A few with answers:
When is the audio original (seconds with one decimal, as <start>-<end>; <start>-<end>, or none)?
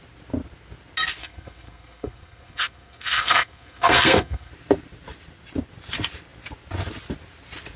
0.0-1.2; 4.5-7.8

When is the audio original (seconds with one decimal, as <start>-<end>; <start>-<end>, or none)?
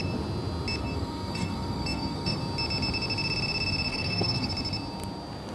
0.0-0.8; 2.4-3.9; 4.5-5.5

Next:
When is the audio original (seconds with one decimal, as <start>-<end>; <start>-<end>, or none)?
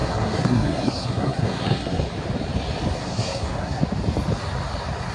2.0-3.0; 3.8-5.1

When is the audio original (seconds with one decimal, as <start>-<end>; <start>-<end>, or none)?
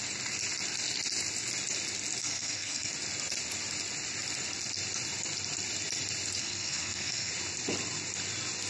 0.0-2.2; 2.9-6.4; 7.3-8.7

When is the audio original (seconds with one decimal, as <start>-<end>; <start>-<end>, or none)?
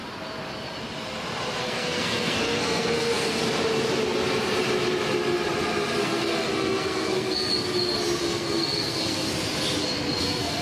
0.0-1.6; 3.4-6.0; 7.5-8.2; 9.3-10.2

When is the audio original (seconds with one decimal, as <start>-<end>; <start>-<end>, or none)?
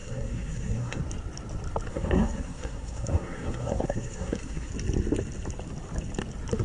1.0-1.9; 4.7-6.6